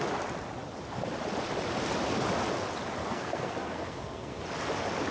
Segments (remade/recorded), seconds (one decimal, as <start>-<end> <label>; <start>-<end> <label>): 0.0-3.0 recorded; 3.0-4.4 remade; 4.4-5.1 recorded